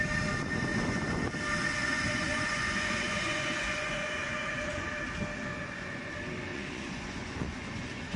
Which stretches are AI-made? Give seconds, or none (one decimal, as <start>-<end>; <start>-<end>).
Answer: 0.7-1.3; 1.8-4.9; 5.5-6.1; 6.5-8.2